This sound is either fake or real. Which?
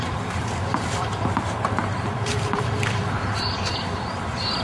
fake